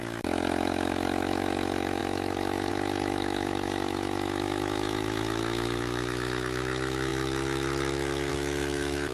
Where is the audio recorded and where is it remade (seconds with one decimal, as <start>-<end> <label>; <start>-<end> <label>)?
0.0-9.1 remade